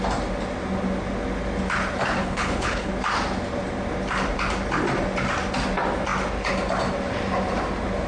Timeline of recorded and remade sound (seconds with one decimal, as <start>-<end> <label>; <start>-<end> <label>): 0.0-2.2 recorded; 2.2-2.9 remade; 2.9-8.1 recorded